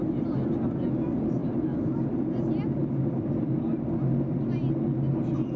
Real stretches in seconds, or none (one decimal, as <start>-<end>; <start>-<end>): 0.0-5.6